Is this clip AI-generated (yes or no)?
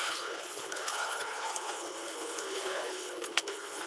yes